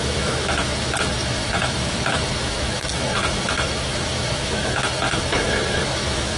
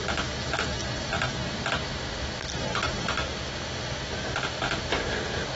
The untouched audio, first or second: second